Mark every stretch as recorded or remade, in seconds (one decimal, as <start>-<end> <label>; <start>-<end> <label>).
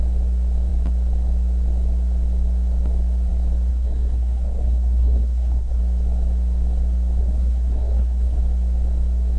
0.0-3.7 recorded; 3.7-5.8 remade; 5.8-7.2 recorded; 7.2-8.4 remade; 8.4-9.4 recorded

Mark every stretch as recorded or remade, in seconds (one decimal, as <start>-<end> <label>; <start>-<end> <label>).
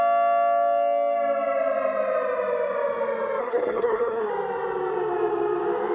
0.0-3.4 recorded; 3.4-4.3 remade; 4.3-5.9 recorded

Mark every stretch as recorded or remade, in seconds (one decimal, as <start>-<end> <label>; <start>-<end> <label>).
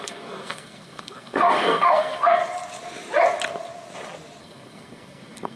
0.0-2.4 remade; 2.4-4.4 recorded; 4.4-5.6 remade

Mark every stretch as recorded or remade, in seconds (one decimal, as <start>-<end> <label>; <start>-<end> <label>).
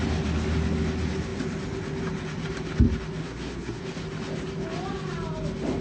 0.0-3.2 recorded; 3.2-3.8 remade; 3.8-5.8 recorded